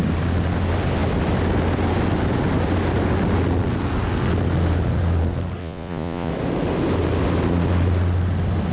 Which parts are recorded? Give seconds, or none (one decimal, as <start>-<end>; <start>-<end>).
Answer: 0.0-5.6; 6.3-8.7